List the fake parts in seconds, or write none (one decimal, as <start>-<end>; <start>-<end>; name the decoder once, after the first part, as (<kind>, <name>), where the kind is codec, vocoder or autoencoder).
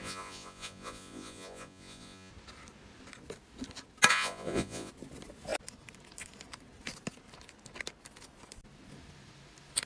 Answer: 0.0-2.3 (vocoder, Vocos); 4.1-4.9